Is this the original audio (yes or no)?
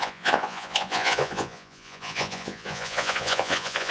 no